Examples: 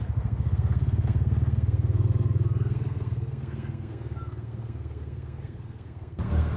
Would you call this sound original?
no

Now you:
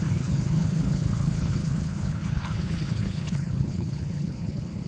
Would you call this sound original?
no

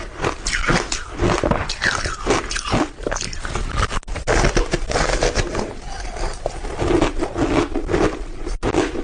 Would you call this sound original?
yes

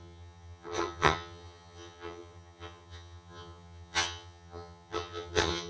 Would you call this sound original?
no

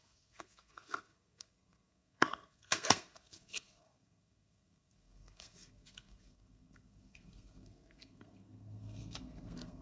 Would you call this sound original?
no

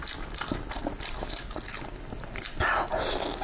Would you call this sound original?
yes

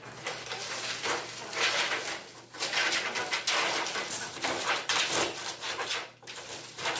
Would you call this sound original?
yes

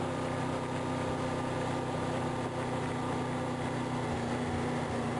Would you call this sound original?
yes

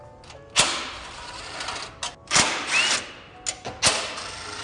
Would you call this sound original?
yes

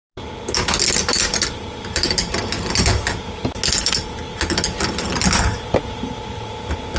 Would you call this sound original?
yes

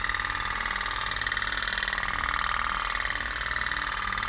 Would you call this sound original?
yes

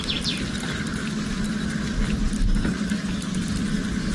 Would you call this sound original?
yes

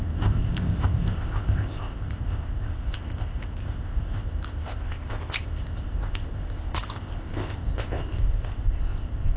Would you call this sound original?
no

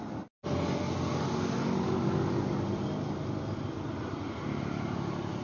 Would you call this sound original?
yes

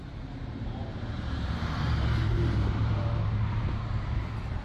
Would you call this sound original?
no